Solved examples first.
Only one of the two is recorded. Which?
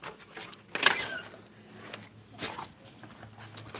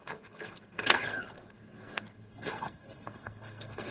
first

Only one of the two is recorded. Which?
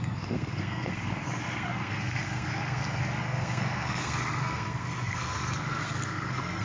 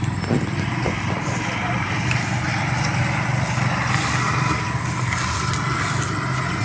second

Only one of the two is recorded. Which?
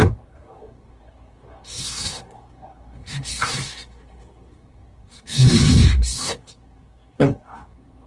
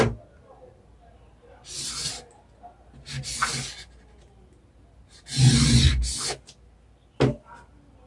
second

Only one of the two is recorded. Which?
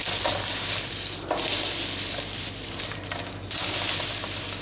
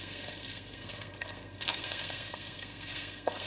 first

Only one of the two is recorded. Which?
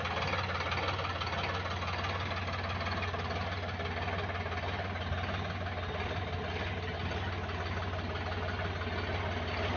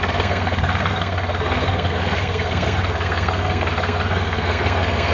first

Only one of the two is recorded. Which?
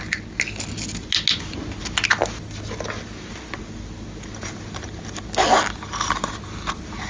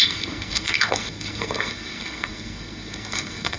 first